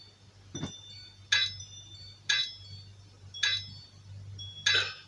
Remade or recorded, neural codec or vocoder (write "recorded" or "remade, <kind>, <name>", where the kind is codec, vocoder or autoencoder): recorded